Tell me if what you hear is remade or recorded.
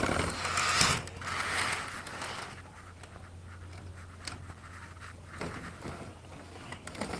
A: recorded